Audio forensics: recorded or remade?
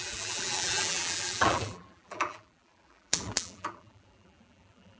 remade